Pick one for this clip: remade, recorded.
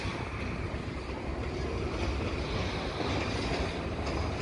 recorded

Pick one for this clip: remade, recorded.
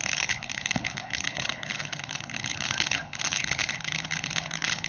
remade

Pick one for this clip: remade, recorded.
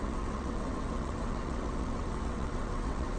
remade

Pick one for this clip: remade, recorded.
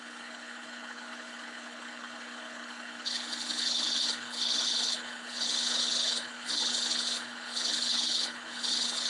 remade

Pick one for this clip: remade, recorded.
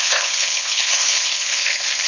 remade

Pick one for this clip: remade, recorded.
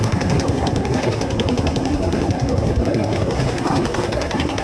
remade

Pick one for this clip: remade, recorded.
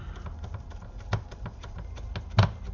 recorded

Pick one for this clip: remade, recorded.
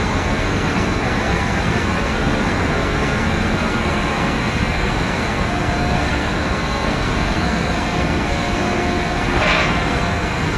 remade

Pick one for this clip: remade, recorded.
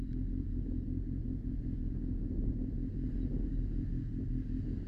recorded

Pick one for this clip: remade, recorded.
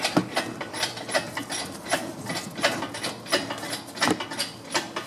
recorded